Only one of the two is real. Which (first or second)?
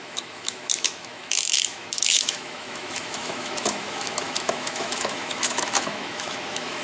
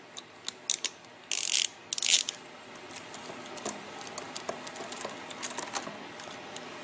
second